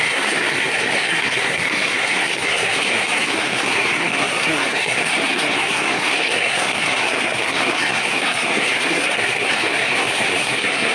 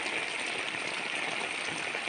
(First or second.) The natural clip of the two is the second